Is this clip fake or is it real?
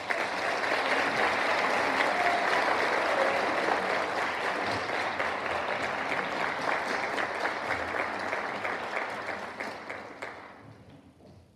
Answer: real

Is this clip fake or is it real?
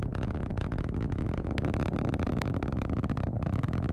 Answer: fake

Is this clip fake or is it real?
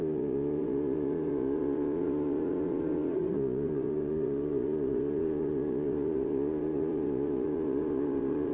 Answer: fake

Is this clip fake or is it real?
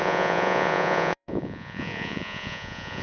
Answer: fake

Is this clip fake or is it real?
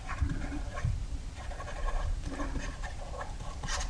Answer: fake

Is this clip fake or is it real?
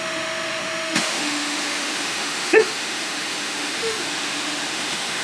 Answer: fake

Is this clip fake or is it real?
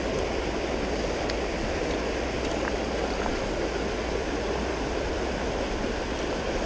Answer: real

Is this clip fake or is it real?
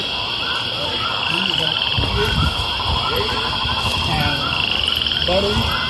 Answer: real